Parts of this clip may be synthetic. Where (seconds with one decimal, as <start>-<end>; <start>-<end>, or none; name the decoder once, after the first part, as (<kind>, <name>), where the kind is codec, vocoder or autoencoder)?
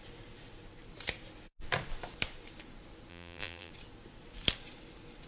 3.1-3.7 (vocoder, BigVGAN v2)